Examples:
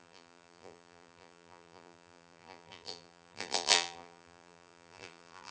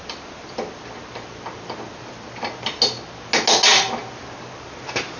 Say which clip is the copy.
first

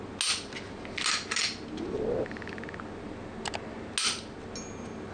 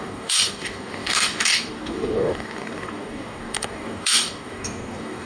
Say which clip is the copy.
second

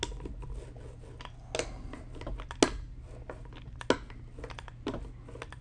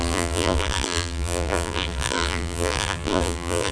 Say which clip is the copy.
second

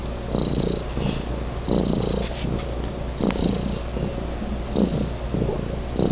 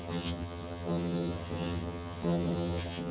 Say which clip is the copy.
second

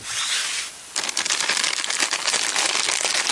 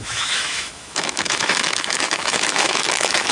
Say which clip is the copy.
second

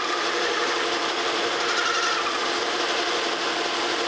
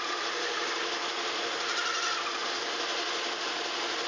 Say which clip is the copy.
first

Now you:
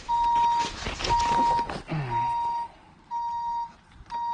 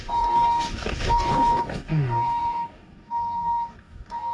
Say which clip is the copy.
second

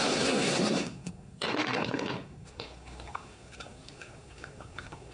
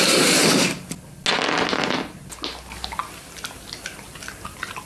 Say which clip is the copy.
first